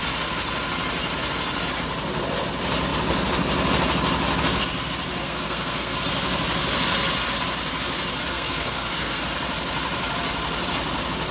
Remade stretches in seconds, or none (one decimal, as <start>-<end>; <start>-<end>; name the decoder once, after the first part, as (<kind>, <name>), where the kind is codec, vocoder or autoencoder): 5.2-6.0 (codec, SNAC); 8.3-9.2